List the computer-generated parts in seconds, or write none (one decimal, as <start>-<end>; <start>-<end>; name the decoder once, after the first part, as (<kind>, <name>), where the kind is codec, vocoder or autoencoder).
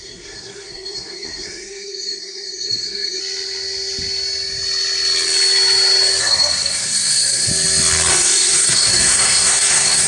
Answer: 0.0-3.2 (codec, SNAC); 6.2-7.5; 8.1-10.1